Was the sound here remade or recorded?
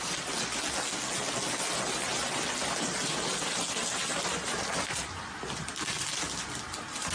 recorded